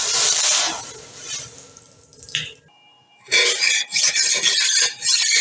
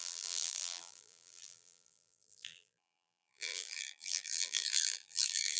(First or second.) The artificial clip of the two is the second